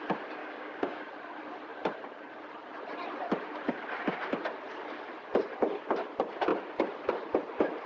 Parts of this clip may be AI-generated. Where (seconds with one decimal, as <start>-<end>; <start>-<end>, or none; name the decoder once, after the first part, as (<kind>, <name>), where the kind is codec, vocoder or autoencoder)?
0.4-1.1 (codec, DAC)